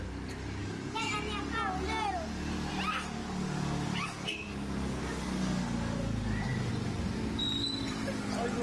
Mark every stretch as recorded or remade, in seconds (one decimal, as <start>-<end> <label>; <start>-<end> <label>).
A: 0.0-0.6 recorded; 0.6-1.1 remade; 1.1-3.2 recorded; 3.2-6.7 remade; 6.7-8.6 recorded